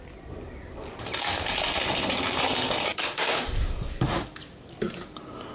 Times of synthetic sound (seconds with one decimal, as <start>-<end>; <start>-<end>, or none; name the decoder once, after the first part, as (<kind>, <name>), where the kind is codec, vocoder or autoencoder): none